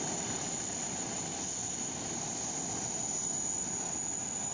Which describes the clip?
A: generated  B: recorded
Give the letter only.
B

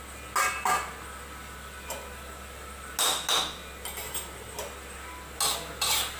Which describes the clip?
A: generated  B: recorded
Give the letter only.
B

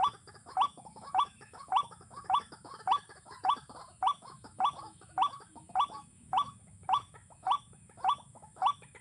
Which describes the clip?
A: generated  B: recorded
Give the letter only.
A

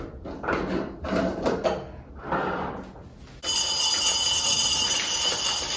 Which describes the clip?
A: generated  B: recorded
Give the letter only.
B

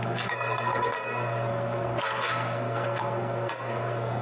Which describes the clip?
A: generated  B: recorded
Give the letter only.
A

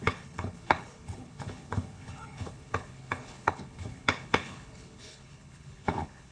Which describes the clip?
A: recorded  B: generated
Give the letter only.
B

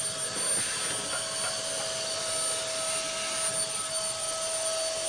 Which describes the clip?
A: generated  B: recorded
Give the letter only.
B